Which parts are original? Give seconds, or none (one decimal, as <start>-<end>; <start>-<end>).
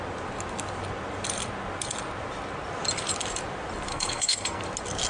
0.0-3.9; 4.6-5.1